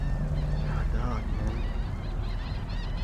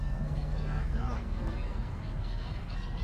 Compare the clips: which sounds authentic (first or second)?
first